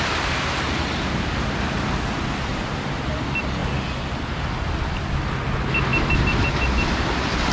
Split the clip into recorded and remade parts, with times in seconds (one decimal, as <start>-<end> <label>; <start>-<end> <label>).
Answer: 0.0-2.5 recorded; 2.5-3.1 remade; 3.1-7.5 recorded